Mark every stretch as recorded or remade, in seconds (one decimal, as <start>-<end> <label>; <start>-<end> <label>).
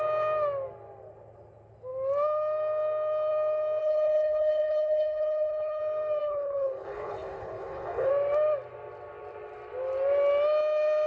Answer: 0.0-3.8 recorded; 3.8-5.8 remade; 5.8-6.2 recorded; 6.2-8.1 remade; 8.1-11.1 recorded